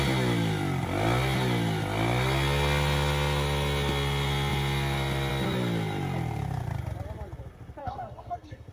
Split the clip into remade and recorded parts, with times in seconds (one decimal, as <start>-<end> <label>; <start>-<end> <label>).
0.0-7.8 recorded; 7.8-8.7 remade